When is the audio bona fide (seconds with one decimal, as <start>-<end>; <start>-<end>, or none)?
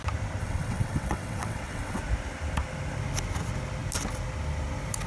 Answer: 0.0-0.4; 2.0-5.1